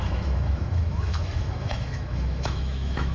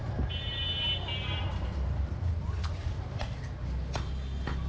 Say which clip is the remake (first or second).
first